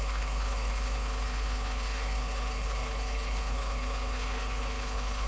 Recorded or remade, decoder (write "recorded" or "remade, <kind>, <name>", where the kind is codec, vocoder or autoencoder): remade, codec, HILCodec